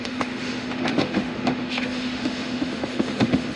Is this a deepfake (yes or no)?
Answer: yes